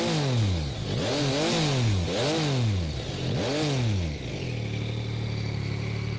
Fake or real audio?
real